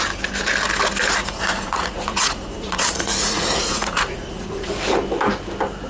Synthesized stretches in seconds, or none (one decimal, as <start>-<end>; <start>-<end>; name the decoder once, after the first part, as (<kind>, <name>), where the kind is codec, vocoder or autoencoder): 1.2-4.7 (vocoder, Vocos)